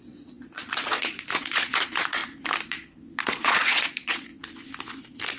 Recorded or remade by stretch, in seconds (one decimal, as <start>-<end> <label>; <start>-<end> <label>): 0.0-2.2 remade; 2.2-3.2 recorded; 3.2-4.3 remade; 4.3-5.4 recorded